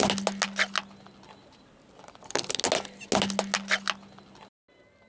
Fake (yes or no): no